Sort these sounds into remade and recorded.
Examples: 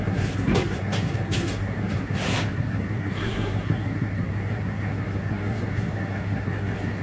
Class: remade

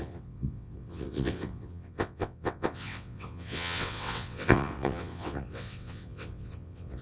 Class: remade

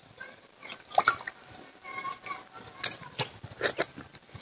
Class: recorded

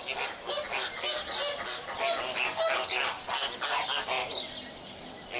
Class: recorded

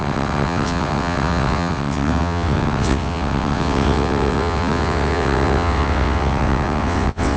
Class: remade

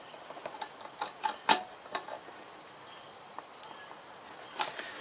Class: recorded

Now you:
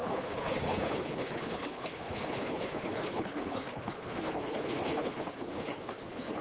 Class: remade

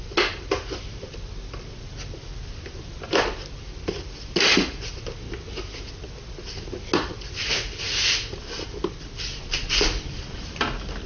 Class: recorded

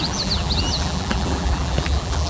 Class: remade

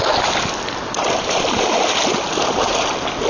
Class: recorded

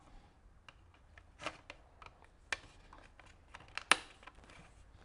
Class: recorded